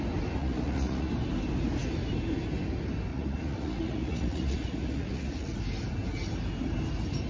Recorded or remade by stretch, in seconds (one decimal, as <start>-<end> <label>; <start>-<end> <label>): 0.0-0.4 recorded; 0.4-1.1 remade; 1.1-3.1 recorded; 3.1-5.6 remade; 5.6-7.3 recorded